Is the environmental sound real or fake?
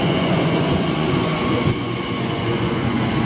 fake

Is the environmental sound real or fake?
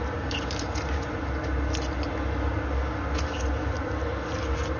real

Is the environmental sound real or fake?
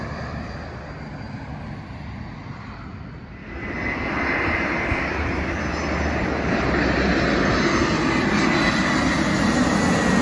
real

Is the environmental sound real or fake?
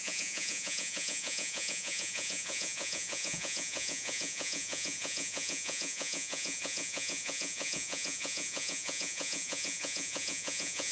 fake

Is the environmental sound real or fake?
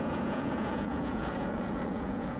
fake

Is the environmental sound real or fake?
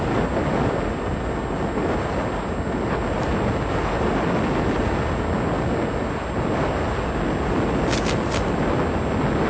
real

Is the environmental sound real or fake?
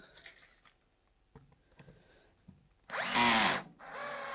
real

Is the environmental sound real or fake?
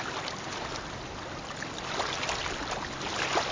real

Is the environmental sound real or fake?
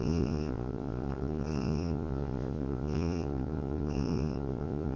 fake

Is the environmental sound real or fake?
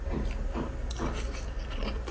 real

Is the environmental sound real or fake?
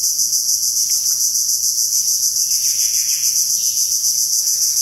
fake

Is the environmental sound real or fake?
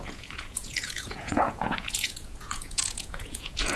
fake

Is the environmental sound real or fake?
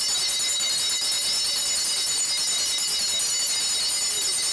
real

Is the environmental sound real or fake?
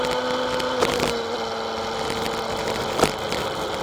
real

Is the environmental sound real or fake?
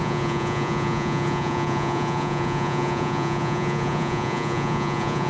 fake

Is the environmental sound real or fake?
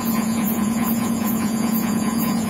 fake